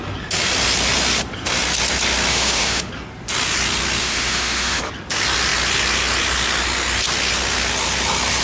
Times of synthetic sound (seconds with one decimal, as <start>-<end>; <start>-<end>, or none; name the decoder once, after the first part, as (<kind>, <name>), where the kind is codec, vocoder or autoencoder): 2.3-2.9 (autoencoder, DAC-VAE); 4.0-4.8